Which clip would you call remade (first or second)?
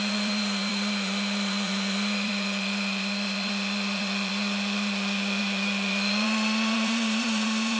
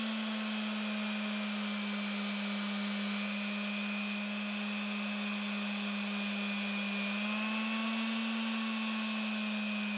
first